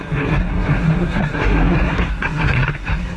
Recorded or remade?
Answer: remade